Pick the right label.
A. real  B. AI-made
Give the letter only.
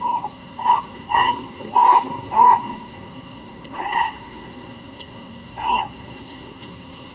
B